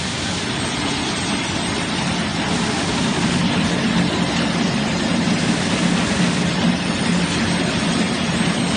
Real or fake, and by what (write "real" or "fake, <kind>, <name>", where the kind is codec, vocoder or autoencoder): real